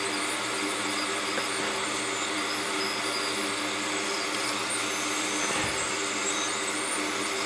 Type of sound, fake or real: real